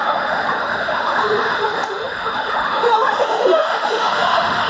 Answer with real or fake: fake